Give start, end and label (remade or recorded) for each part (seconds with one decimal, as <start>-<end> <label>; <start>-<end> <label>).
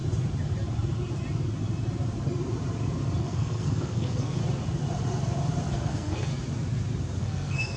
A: 0.0-3.2 recorded; 3.2-4.4 remade; 4.4-5.7 recorded; 5.7-6.3 remade; 6.3-7.2 recorded; 7.2-7.8 remade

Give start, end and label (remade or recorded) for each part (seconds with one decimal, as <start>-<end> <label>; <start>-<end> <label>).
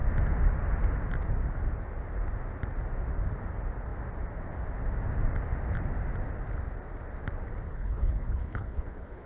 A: 0.0-7.7 recorded; 7.7-9.3 remade